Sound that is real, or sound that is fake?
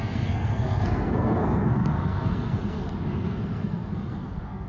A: fake